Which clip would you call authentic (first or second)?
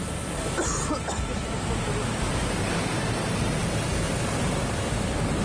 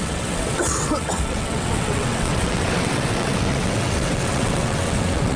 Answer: first